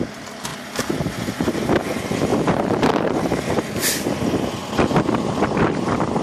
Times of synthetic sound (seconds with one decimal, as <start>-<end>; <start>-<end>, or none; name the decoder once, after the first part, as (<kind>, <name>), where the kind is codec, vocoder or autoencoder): 2.3-3.5 (vocoder, BigVGAN v2)